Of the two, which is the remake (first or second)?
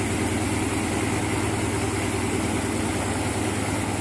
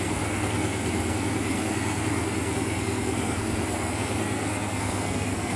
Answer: second